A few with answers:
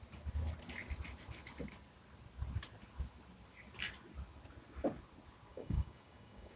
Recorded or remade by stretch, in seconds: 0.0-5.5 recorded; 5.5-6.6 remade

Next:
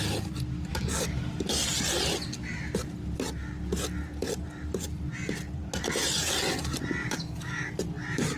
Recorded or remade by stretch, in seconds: 0.0-0.7 recorded; 0.7-1.2 remade; 1.2-7.0 recorded; 7.0-7.7 remade; 7.7-8.4 recorded

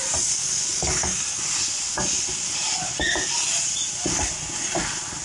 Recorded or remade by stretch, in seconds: 0.0-0.4 recorded; 0.4-1.4 remade; 1.4-5.2 recorded

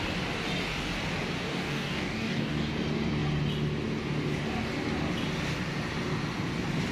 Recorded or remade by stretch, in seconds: 0.0-1.5 recorded; 1.5-2.7 remade; 2.7-6.9 recorded

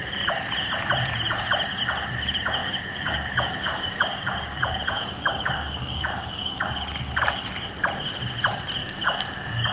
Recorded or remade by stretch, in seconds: 0.0-2.6 recorded; 2.6-6.7 remade; 6.7-8.8 recorded; 8.8-9.7 remade

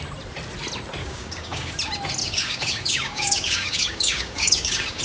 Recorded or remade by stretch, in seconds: 0.0-1.0 recorded; 1.0-1.7 remade; 1.7-2.2 recorded; 2.2-5.0 remade

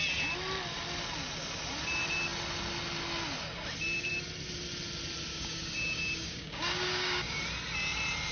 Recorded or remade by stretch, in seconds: 0.0-5.3 recorded; 5.3-7.4 remade; 7.4-8.3 recorded

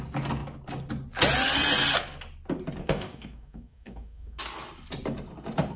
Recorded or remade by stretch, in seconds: 0.0-2.8 recorded; 2.8-4.4 remade; 4.4-5.8 recorded